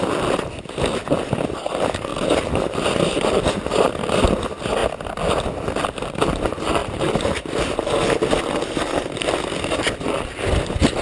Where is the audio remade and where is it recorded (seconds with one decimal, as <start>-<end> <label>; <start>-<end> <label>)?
0.0-6.8 recorded; 6.8-7.6 remade; 7.6-11.0 recorded